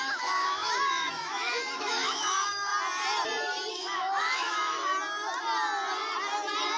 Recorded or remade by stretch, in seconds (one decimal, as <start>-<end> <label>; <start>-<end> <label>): 0.0-2.7 remade; 2.7-3.7 recorded; 3.7-4.9 remade; 4.9-6.8 recorded